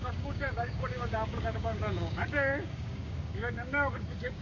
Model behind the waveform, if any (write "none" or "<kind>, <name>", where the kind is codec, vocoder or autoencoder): codec, DAC